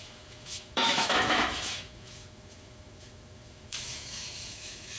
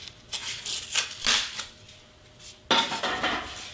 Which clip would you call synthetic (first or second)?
first